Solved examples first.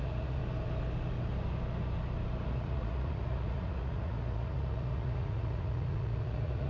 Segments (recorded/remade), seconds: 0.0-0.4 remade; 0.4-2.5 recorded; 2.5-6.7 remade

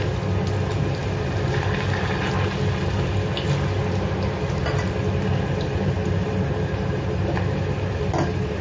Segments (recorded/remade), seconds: 0.0-8.6 recorded